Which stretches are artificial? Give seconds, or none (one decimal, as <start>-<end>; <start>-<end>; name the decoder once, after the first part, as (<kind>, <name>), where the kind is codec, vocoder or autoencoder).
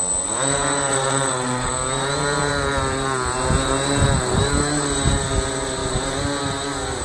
0.9-1.7 (vocoder, WaveNeXt)